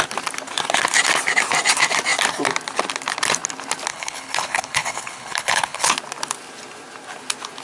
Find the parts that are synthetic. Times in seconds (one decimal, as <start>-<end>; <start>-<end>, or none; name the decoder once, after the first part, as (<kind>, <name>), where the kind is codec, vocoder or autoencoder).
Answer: 3.9-5.9 (codec, HILCodec)